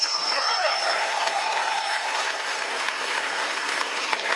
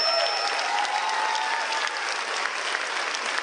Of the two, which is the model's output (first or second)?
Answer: first